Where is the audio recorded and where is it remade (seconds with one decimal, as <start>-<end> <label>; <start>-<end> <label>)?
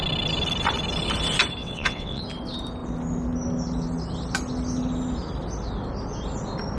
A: 0.0-1.6 recorded; 1.6-2.2 remade; 2.2-6.8 recorded